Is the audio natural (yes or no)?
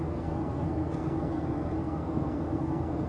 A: no